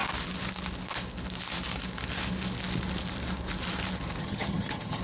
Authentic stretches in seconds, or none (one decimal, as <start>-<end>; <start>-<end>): 0.0-4.2